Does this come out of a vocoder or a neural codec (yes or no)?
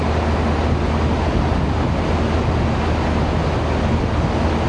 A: no